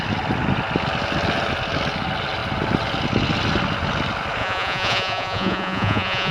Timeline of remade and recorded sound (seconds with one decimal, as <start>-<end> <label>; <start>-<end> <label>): 0.0-4.4 recorded; 4.4-6.3 remade